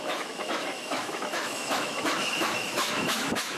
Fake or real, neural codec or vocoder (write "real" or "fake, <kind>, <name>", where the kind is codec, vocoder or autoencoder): fake, autoencoder, DAC-VAE